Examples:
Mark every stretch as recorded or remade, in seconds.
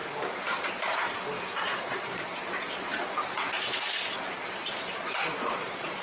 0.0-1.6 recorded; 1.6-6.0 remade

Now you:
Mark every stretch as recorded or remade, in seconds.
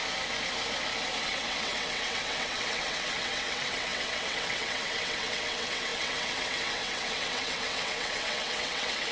0.0-1.2 recorded; 1.2-9.1 remade